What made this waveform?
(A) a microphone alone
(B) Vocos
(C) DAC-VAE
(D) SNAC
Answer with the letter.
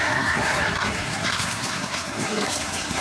D